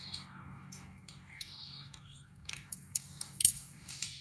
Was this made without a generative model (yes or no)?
no